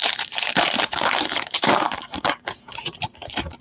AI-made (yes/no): yes